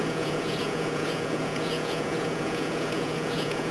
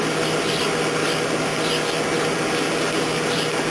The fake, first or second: first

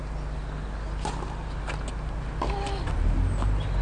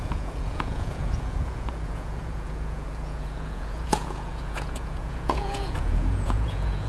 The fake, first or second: second